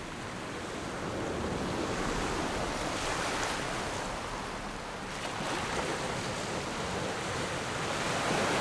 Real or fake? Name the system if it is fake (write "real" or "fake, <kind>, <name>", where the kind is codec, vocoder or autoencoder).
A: real